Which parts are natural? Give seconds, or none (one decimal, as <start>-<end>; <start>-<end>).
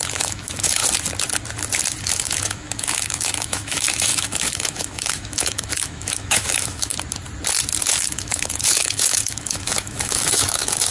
0.8-2.0; 6.9-7.8